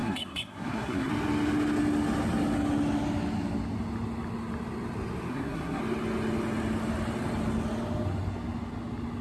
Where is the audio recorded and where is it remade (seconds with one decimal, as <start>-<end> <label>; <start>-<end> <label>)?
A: 0.0-1.1 remade; 1.1-5.3 recorded; 5.3-5.8 remade; 5.8-9.2 recorded